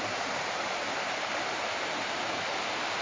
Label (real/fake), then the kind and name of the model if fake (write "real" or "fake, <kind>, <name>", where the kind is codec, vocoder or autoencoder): fake, vocoder, BigVGAN v2